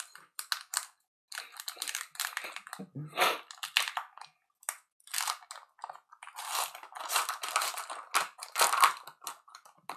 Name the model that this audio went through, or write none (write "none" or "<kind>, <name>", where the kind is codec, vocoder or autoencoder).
none